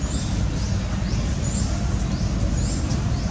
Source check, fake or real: real